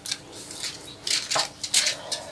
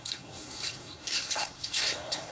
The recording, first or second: first